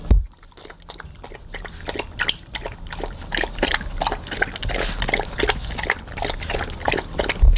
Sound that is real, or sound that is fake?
real